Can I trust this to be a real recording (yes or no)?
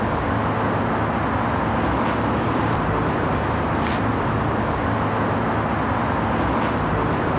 yes